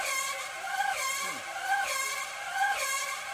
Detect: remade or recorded recorded